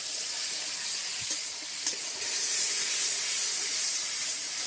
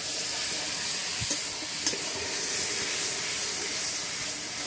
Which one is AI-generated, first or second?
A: first